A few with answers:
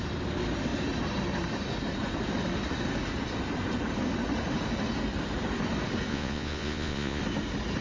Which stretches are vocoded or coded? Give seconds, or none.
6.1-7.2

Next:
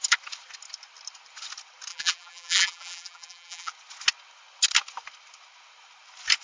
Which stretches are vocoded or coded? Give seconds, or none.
1.9-3.7

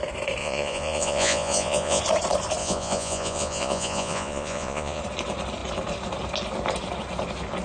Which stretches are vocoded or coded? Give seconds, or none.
0.4-2.0; 2.6-5.0

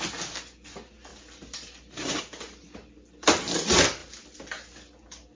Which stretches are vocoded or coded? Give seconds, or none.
1.1-2.2

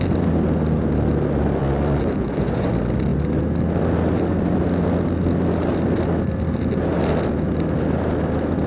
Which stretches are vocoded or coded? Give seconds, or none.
1.6-2.7